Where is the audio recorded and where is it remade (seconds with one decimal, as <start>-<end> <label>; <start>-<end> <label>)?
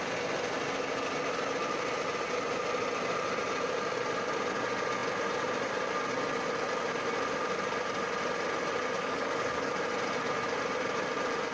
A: 0.0-9.0 recorded; 9.0-9.7 remade; 9.7-11.5 recorded